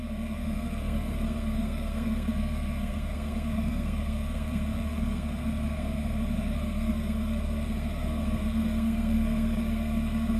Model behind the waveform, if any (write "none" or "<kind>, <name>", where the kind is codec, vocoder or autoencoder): codec, SNAC